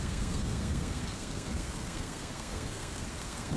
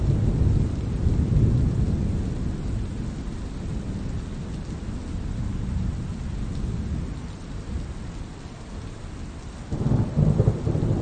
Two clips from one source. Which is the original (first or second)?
second